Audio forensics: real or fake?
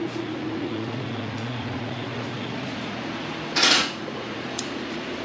fake